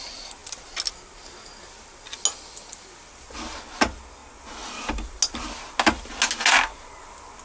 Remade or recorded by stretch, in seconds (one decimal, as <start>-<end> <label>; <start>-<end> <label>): 0.0-7.4 recorded